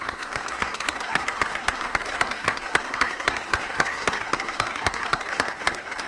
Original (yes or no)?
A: no